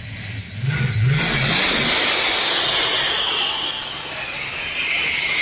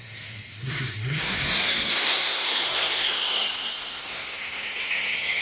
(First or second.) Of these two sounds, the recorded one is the first